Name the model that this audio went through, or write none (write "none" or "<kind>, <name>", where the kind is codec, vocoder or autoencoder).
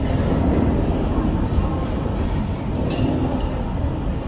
none